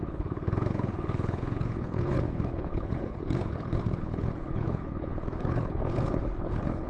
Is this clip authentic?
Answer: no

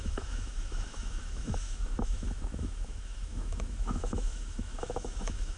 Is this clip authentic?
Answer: no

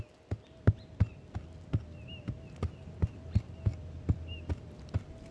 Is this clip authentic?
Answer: yes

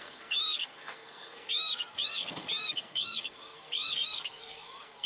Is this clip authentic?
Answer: no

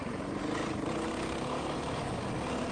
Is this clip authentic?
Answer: yes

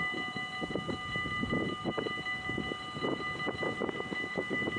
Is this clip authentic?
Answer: yes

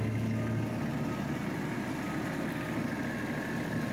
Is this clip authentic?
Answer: yes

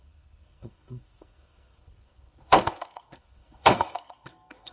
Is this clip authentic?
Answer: no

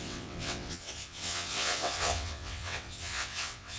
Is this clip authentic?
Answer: no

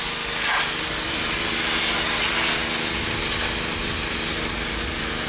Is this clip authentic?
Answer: yes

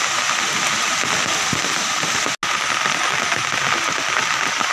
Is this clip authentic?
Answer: yes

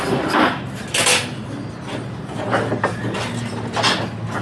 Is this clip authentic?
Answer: yes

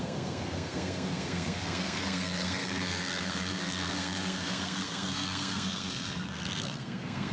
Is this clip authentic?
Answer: no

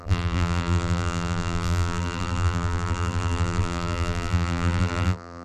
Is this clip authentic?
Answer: no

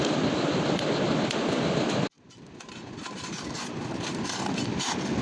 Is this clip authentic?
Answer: yes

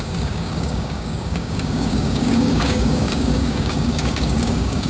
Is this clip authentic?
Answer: no